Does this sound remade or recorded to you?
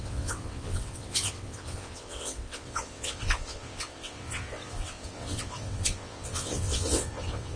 remade